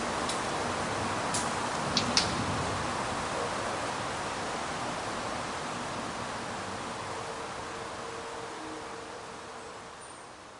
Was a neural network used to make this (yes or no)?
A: no